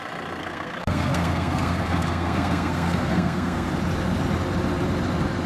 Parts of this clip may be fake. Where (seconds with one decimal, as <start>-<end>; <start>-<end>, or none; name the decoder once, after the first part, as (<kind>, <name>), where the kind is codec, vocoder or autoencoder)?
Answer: 0.4-3.7 (codec, SNAC)